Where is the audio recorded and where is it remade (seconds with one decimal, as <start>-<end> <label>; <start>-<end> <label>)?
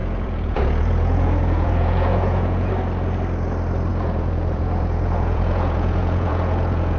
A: 0.0-2.7 remade; 2.7-3.9 recorded; 3.9-7.0 remade